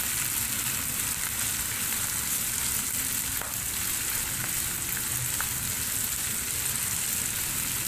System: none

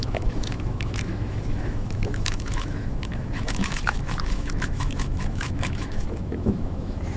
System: autoencoder, DAC-VAE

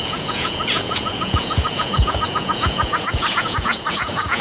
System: vocoder, Vocos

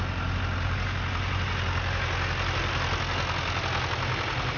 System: none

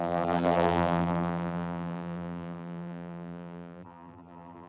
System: vocoder, BigVGAN v2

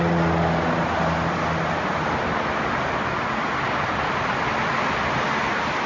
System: none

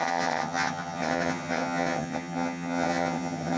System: vocoder, HiFi-GAN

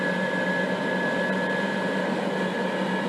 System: vocoder, BigVGAN v2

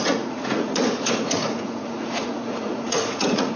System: vocoder, Vocos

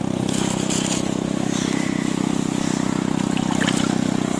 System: none